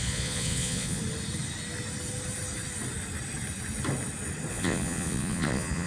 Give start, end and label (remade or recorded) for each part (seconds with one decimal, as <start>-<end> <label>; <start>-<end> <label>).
0.0-1.0 remade; 1.0-4.5 recorded; 4.5-5.9 remade